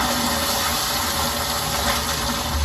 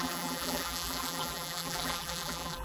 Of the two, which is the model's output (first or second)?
second